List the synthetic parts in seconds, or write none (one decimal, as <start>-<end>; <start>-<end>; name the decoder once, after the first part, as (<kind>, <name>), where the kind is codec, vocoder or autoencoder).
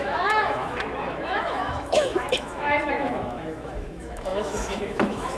0.0-5.4 (autoencoder, DAC-VAE)